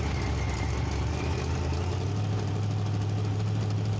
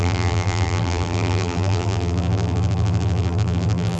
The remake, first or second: second